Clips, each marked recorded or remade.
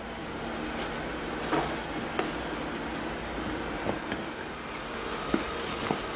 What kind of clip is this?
recorded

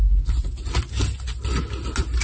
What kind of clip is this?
recorded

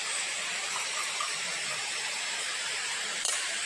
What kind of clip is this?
remade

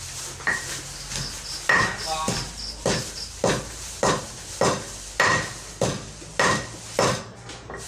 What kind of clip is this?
recorded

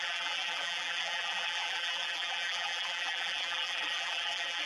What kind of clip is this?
remade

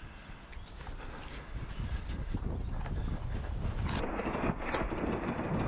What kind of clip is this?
recorded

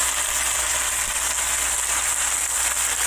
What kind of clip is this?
recorded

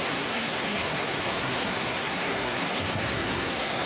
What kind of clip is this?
remade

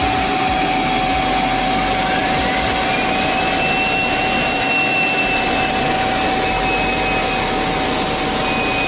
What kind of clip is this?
recorded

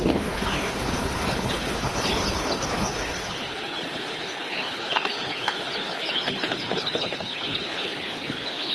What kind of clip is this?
remade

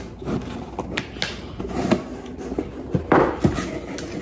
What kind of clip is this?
recorded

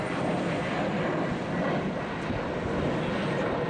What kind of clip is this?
recorded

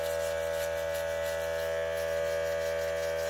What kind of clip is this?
recorded